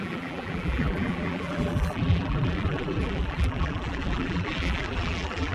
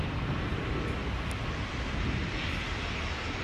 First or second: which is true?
second